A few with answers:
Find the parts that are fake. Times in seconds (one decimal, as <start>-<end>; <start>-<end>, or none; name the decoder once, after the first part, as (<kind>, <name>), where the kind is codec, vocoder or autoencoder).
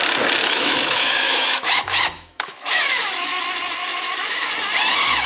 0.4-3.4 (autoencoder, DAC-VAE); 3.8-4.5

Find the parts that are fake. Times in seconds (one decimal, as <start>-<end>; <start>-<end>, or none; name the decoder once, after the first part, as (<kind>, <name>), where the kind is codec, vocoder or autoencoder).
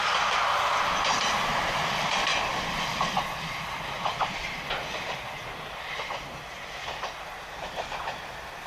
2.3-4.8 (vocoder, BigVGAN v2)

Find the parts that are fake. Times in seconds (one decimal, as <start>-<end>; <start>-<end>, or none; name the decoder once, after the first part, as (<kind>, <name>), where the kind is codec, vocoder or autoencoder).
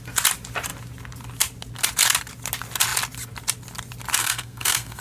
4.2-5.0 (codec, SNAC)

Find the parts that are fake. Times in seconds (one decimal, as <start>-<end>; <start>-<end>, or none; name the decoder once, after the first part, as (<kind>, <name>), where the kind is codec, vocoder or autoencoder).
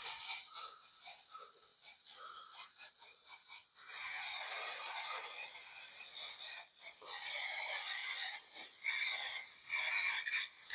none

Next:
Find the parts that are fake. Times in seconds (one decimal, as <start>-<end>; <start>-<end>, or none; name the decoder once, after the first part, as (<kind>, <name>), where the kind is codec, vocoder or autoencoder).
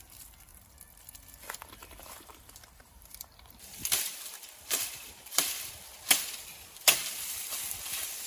0.0-0.5 (vocoder, BigVGAN v2); 2.0-7.4